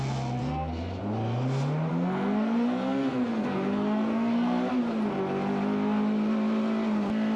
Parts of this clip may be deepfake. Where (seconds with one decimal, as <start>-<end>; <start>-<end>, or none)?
0.4-1.0; 1.9-4.7